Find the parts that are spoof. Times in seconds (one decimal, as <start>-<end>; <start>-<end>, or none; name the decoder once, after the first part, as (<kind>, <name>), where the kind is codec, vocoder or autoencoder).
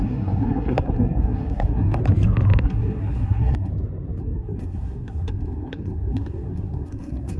0.0-2.0 (codec, SNAC); 2.6-3.7; 4.2-7.4